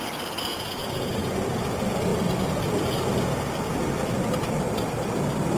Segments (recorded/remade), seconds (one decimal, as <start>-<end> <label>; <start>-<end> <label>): 0.0-0.5 recorded; 0.5-1.4 remade; 1.4-5.6 recorded